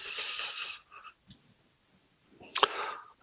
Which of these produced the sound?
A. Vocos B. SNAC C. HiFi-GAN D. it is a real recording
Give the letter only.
D